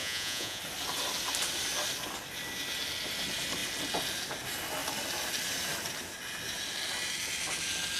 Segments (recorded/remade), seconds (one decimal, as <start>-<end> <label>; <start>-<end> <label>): 0.0-0.6 remade; 0.6-8.0 recorded